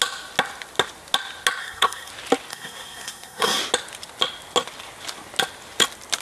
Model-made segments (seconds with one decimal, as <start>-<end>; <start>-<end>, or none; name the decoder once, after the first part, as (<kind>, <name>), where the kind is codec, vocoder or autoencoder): 1.6-2.1 (codec, SNAC); 2.5-3.6